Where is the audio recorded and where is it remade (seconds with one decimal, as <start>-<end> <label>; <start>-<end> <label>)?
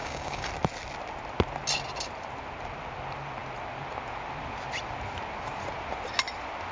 0.0-0.5 remade; 0.5-6.7 recorded